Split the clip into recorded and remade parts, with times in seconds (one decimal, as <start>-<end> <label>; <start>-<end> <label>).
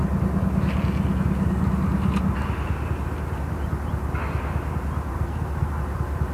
0.0-5.1 recorded; 5.1-5.8 remade; 5.8-6.3 recorded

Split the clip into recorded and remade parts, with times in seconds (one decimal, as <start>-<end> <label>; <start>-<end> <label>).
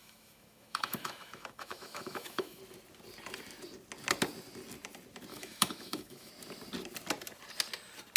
0.0-2.6 remade; 2.6-5.3 recorded; 5.3-6.3 remade; 6.3-8.2 recorded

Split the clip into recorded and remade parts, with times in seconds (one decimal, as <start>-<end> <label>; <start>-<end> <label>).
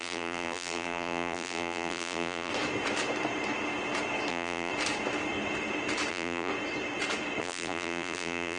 0.0-2.5 remade; 2.5-4.3 recorded; 4.3-4.7 remade; 4.7-6.1 recorded; 6.1-6.5 remade; 6.5-7.4 recorded; 7.4-8.6 remade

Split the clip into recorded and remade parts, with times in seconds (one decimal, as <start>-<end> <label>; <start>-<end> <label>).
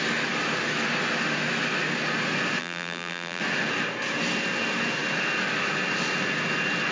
0.0-2.6 recorded; 2.6-3.4 remade; 3.4-6.9 recorded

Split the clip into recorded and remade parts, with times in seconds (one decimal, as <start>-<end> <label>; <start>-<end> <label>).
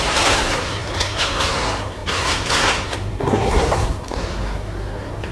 0.0-5.3 remade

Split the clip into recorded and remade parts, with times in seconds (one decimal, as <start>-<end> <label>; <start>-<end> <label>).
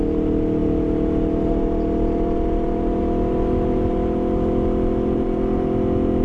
0.0-6.2 recorded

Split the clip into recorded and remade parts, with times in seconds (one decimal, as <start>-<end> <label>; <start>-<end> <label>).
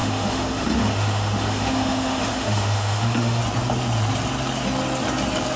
0.0-3.4 remade; 3.4-5.6 recorded